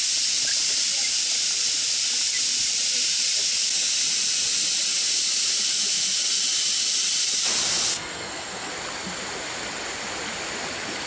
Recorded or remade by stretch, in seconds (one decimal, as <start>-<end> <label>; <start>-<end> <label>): 0.0-7.9 recorded; 7.9-8.7 remade; 8.7-11.1 recorded